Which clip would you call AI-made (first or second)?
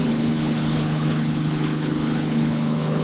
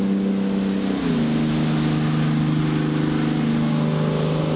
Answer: first